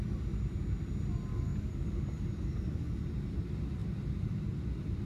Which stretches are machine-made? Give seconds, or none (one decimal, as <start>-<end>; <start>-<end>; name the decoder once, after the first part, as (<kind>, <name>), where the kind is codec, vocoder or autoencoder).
1.3-3.0 (codec, DAC)